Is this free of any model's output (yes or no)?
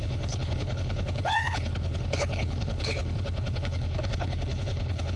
no